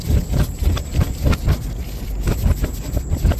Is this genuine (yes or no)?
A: yes